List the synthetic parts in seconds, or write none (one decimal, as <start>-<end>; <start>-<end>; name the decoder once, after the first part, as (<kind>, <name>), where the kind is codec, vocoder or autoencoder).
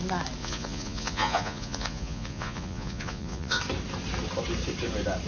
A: 0.4-3.6 (vocoder, Vocos)